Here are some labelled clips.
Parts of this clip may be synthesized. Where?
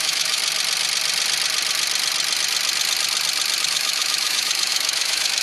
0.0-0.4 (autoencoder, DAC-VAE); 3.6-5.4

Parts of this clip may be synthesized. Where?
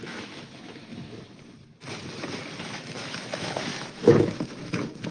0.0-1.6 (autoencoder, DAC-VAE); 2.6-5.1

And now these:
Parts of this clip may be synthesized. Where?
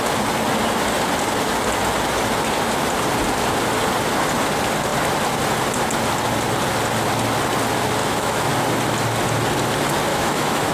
8.0-8.5 (autoencoder, DAC-VAE); 10.1-10.7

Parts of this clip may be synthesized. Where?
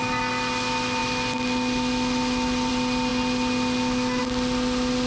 none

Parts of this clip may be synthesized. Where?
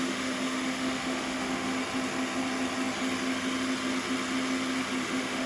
0.0-1.7 (autoencoder, DAC-VAE); 5.0-5.5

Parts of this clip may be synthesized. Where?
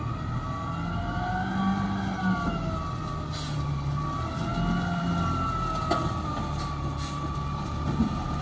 none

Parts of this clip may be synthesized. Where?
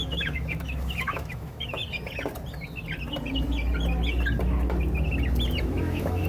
0.0-1.8 (autoencoder, DAC-VAE); 5.6-6.3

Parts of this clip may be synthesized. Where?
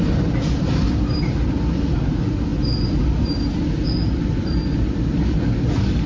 none